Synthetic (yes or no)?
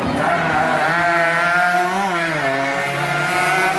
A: no